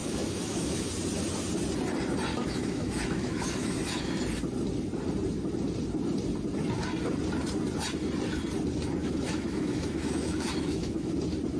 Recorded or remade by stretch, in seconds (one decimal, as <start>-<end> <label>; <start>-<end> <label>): 0.0-0.9 remade; 0.9-2.3 recorded; 2.3-4.1 remade; 4.1-9.0 recorded; 9.0-11.1 remade; 11.1-11.6 recorded